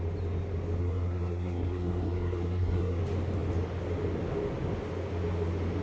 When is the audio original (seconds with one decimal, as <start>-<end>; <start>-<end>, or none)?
0.0-0.8; 3.0-5.8